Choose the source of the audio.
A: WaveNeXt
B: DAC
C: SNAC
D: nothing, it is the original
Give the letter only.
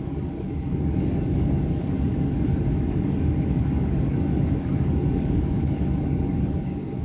B